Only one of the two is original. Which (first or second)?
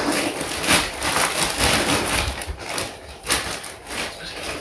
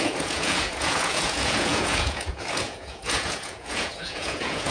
first